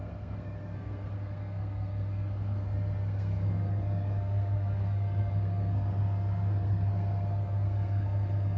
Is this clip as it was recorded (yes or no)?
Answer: no